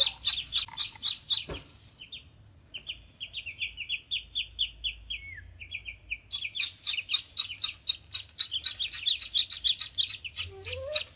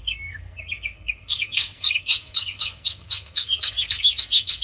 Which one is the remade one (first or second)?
second